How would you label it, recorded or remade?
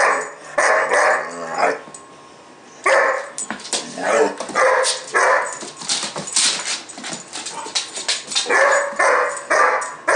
recorded